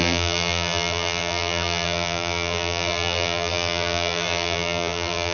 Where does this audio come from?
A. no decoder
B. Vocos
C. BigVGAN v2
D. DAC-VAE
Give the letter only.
C